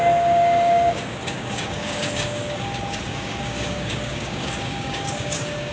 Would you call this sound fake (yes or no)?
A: yes